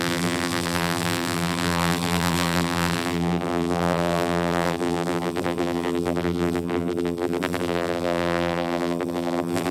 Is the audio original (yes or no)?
no